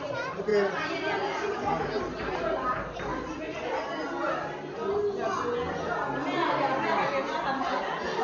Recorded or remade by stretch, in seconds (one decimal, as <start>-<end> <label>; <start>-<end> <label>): 0.0-0.5 remade; 0.5-1.7 recorded; 1.7-3.1 remade; 3.1-8.2 recorded